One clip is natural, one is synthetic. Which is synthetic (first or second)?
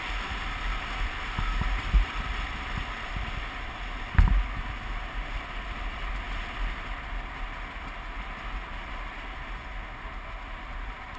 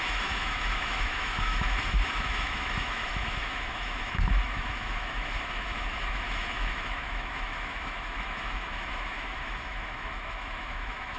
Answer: second